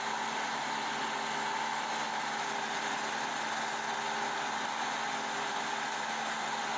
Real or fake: real